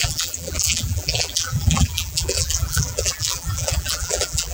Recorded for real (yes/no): no